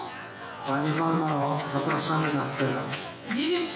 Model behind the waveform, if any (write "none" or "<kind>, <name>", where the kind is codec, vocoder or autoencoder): vocoder, Vocos